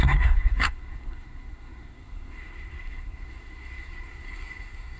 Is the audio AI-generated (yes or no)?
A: yes